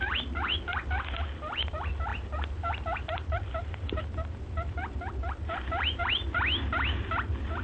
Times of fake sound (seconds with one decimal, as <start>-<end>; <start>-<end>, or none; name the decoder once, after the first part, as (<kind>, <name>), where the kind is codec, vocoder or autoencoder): 2.1-6.0 (vocoder, BigVGAN v2)